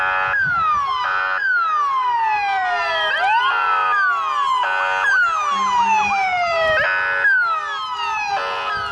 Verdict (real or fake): real